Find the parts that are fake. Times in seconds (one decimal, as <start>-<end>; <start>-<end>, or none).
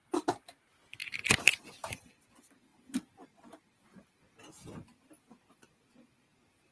1.0-1.7; 2.7-4.2